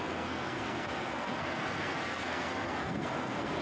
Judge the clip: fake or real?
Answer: fake